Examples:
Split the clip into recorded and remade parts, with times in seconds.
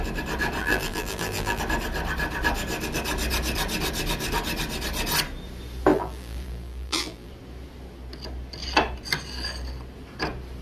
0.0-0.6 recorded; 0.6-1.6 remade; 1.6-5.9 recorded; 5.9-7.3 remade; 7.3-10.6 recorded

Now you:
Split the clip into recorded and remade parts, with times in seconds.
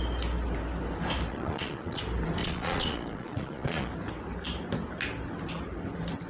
0.0-1.3 recorded; 1.3-2.0 remade; 2.0-2.4 recorded; 2.4-3.9 remade; 3.9-6.3 recorded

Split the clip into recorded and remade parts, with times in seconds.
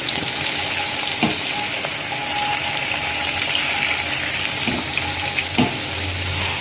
0.0-6.6 recorded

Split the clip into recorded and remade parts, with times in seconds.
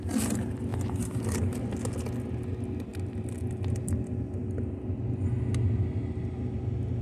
0.0-7.0 recorded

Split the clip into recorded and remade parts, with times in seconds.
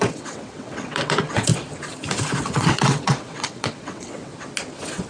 0.0-1.5 remade; 1.5-2.4 recorded; 2.4-4.3 remade; 4.3-5.1 recorded